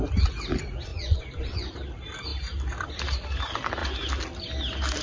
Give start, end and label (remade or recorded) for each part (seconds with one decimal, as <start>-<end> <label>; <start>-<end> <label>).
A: 0.0-0.9 recorded; 0.9-1.7 remade; 1.7-5.0 recorded